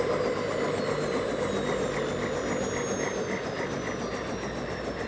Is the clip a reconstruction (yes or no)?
no